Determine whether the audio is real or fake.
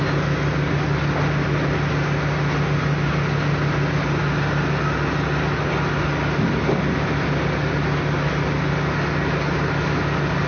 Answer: real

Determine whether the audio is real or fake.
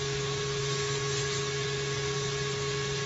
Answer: real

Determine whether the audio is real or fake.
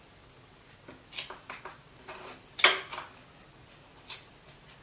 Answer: real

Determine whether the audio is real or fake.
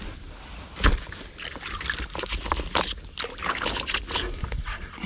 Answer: real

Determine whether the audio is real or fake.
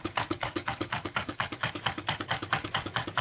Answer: fake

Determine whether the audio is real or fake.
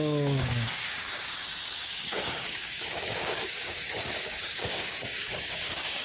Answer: fake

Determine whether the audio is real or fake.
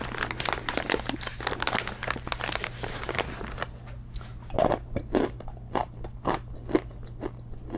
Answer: real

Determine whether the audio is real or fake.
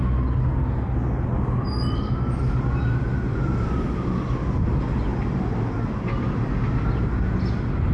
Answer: real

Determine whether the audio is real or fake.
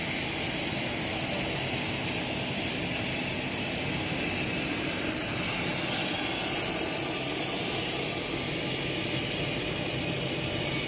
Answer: real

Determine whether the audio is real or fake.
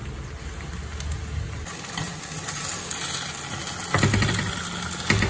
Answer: real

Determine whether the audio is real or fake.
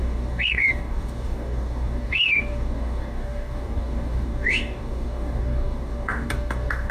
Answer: fake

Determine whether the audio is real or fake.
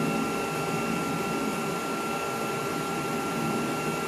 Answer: real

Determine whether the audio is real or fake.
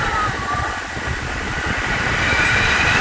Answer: real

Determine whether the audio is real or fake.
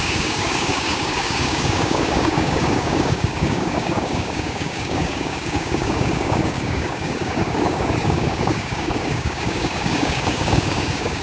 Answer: fake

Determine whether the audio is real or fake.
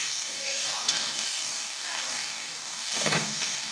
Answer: fake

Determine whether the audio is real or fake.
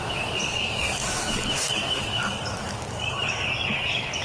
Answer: fake